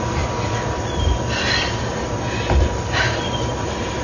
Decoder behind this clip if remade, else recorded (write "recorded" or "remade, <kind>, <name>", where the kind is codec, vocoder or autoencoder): recorded